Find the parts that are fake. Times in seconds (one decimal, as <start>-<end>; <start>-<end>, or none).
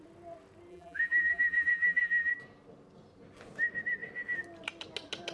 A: 0.7-2.3